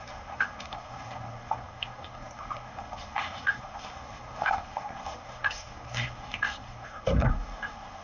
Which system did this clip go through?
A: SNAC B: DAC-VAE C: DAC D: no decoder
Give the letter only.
A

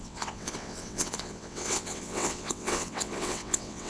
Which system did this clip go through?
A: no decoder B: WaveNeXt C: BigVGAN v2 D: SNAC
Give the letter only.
B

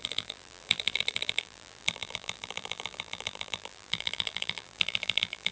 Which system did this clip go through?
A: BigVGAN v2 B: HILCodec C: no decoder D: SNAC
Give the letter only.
A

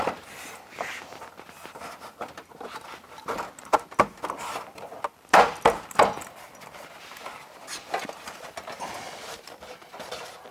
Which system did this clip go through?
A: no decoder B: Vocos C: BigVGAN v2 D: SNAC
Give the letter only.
A